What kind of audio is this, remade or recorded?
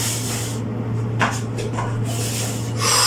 recorded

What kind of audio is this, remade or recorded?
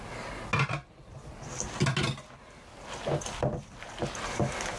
recorded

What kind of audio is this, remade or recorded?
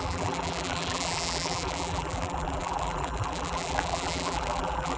remade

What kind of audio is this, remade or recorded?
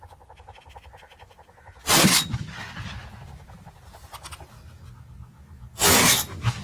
recorded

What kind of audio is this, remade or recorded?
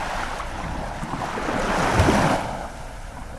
recorded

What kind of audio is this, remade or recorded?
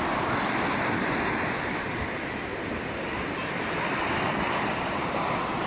remade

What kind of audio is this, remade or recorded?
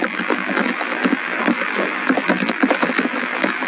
remade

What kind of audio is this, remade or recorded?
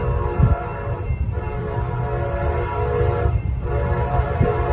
remade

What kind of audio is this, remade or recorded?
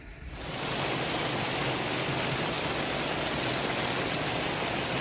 recorded